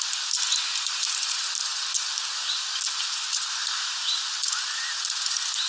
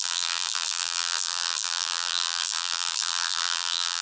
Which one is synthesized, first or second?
second